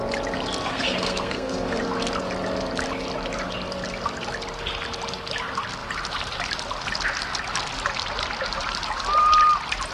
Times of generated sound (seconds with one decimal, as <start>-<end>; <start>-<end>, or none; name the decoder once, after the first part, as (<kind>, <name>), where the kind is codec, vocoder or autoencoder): 0.7-1.8 (codec, SNAC)